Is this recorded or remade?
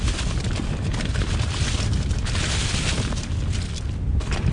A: recorded